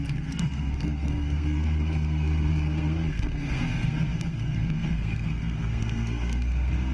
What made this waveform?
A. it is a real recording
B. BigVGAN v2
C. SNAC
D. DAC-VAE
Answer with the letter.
C